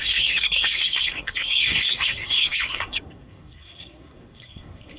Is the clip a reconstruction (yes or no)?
yes